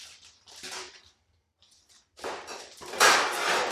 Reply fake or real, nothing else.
fake